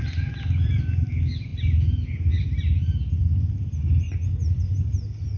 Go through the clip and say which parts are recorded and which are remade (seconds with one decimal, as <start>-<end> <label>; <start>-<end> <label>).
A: 0.0-5.4 recorded